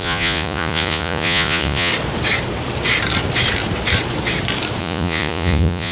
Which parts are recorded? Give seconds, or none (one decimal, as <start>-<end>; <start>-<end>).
1.9-4.8